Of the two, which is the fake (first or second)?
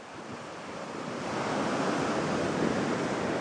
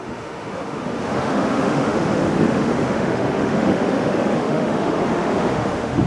second